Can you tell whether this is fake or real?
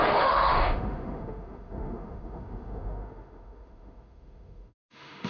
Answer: fake